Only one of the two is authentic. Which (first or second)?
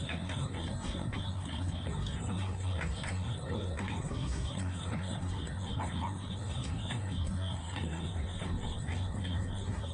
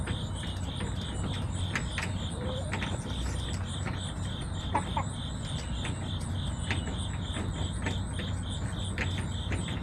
second